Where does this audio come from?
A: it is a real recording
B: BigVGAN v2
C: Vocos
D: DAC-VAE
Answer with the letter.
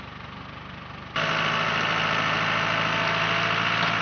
A